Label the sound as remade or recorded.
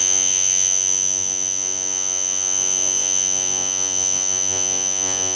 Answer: remade